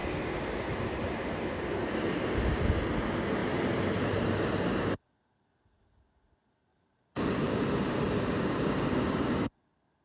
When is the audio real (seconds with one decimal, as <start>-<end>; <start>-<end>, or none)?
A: 0.0-3.4; 4.3-6.7; 7.7-10.0